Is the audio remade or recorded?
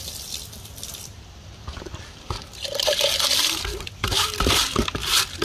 remade